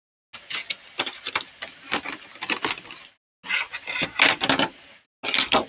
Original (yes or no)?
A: yes